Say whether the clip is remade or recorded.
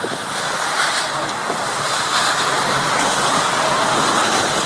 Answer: recorded